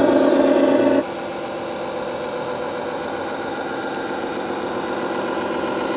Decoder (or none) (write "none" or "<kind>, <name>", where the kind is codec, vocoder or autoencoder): none